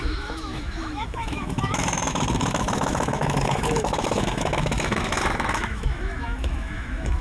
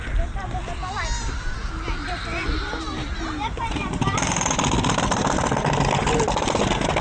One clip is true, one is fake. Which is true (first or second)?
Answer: second